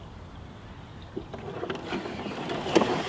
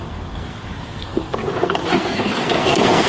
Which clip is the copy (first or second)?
second